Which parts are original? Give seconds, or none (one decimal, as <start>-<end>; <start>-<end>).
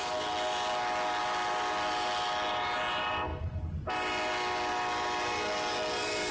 0.0-6.3